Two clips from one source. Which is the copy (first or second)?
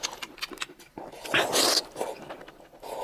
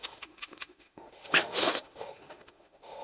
second